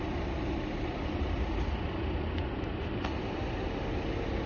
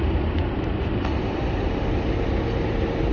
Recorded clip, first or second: first